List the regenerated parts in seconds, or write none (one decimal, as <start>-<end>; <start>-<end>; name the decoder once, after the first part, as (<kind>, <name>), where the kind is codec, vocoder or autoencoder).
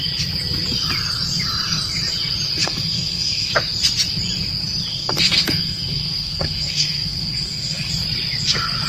2.6-3.5 (codec, SNAC); 4.9-7.9